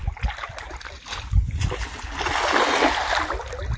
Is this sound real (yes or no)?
yes